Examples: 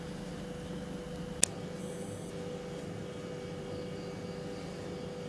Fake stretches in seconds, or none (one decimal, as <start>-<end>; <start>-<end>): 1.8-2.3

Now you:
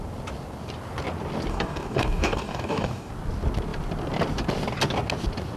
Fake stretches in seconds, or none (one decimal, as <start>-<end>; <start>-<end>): 1.5-3.1

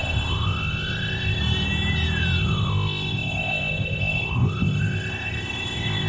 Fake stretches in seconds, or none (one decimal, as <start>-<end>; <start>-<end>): 0.0-1.4; 2.4-6.1

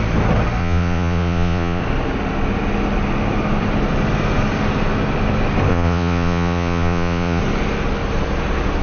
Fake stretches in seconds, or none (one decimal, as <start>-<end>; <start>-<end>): 0.6-1.8; 5.7-7.4

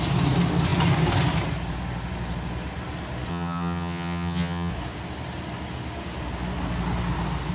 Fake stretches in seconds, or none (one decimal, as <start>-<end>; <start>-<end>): 3.3-4.7

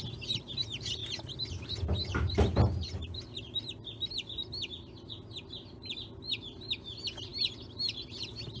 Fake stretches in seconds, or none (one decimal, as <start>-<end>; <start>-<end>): none